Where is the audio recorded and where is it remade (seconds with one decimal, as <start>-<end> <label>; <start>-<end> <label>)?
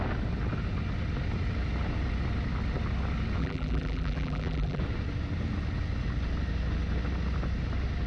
0.0-3.4 recorded; 3.4-4.8 remade; 4.8-8.1 recorded